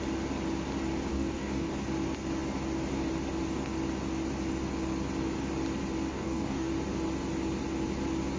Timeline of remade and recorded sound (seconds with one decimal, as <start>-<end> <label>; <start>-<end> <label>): 0.0-1.1 recorded; 1.1-1.7 remade; 1.7-6.1 recorded; 6.1-6.7 remade; 6.7-8.4 recorded